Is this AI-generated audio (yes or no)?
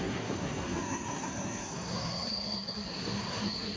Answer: yes